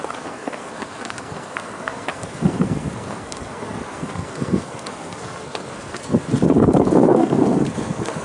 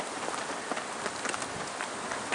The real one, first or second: second